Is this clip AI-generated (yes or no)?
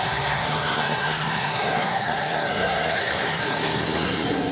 yes